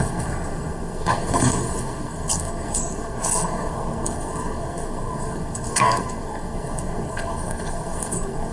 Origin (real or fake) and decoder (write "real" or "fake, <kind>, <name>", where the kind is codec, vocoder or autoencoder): fake, codec, SNAC